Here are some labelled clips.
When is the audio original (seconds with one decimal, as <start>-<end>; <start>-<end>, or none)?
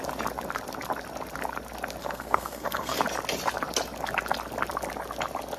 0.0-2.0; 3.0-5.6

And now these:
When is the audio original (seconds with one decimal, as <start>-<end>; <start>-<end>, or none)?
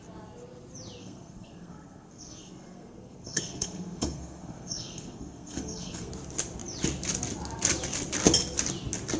0.0-1.0; 6.1-9.2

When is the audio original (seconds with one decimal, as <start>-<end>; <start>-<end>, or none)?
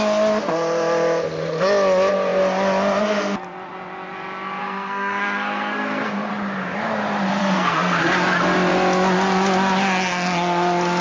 0.0-4.6; 6.3-7.4; 8.0-11.0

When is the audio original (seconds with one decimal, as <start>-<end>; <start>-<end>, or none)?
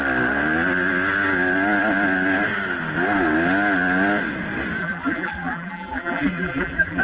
0.0-4.8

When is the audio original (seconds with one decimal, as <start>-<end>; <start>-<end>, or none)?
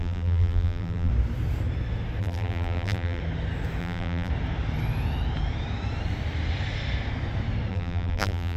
1.1-2.2; 3.2-3.8; 4.3-7.7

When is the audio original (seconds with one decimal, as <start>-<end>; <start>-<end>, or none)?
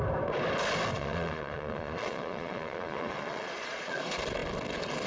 0.0-0.9; 4.0-5.1